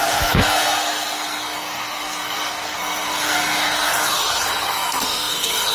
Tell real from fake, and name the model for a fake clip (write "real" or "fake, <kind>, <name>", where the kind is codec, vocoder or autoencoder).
fake, codec, SNAC